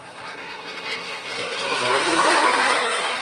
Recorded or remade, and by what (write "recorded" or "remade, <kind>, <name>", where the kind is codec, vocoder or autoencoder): remade, codec, SNAC